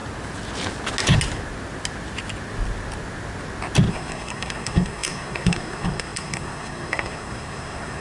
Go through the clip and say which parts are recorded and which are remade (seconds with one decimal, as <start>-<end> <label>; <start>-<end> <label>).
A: 0.0-3.9 recorded; 3.9-8.0 remade